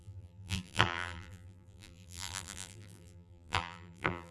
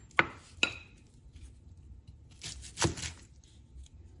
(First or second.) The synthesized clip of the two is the first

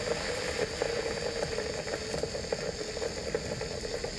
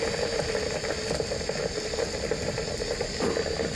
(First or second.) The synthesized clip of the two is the second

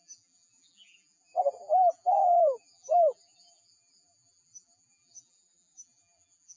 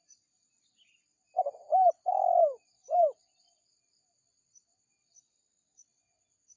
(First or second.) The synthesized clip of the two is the first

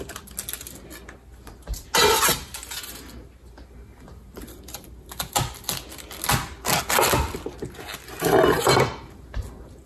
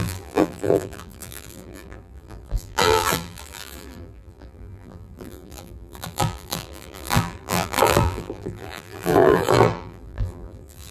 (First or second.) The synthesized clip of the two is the second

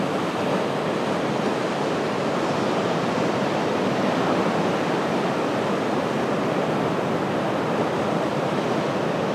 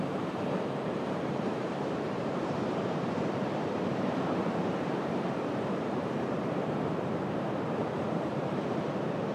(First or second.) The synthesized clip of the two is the second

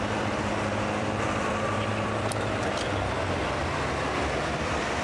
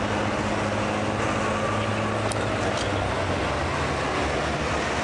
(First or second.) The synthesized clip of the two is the first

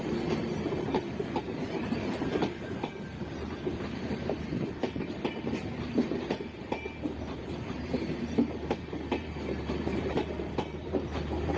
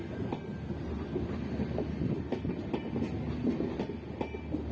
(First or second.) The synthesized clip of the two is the first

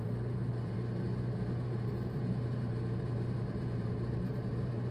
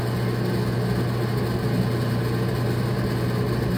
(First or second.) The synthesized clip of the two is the first